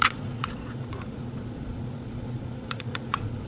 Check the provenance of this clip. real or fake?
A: fake